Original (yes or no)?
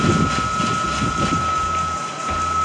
yes